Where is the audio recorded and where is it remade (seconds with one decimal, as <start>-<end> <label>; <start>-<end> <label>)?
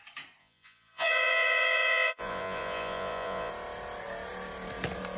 0.0-0.4 recorded; 0.4-3.5 remade; 3.5-5.2 recorded